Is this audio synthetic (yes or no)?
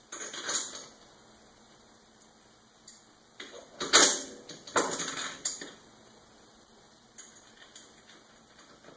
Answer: no